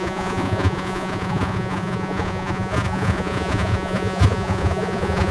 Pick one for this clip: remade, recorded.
remade